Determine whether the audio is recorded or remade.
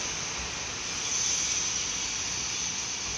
recorded